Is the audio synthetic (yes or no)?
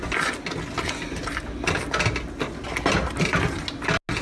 no